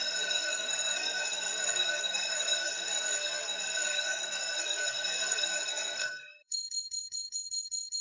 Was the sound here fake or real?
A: fake